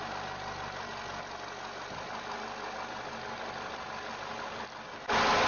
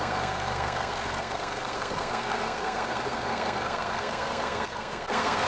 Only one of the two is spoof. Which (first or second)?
second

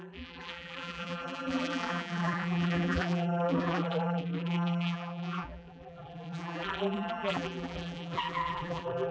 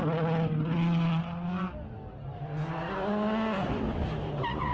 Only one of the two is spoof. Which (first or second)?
first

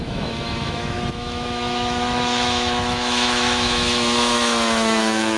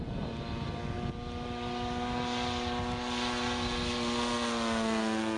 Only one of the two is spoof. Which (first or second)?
first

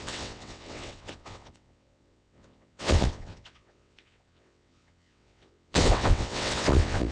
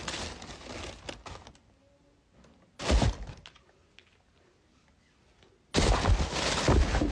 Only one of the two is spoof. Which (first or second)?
first